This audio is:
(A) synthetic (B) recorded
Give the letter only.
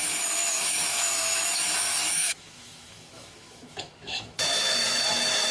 A